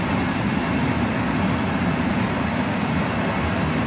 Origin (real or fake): real